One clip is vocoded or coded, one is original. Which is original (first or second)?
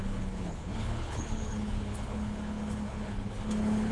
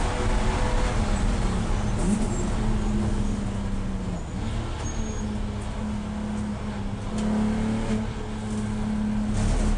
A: second